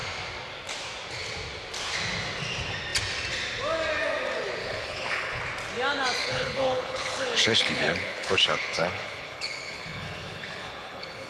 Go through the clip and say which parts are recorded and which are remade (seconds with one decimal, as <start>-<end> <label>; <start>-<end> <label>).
0.0-4.6 recorded; 4.6-5.4 remade; 5.4-6.2 recorded; 6.2-11.3 remade